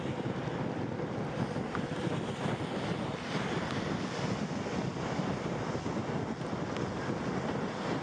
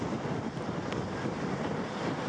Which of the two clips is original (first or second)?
first